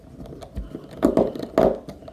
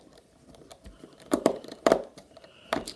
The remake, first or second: second